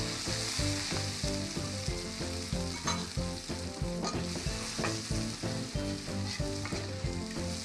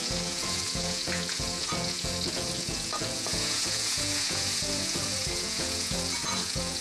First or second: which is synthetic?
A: second